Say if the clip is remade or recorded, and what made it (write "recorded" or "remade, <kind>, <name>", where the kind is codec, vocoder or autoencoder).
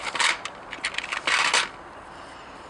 recorded